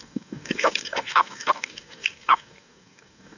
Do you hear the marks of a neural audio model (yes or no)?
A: yes